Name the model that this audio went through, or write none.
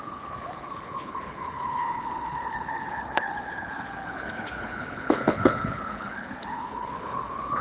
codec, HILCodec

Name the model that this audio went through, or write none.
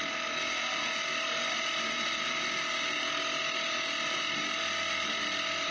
none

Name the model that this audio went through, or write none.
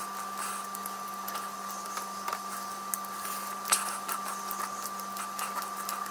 none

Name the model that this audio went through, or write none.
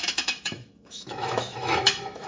autoencoder, DAC-VAE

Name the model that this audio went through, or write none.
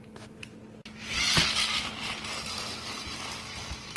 none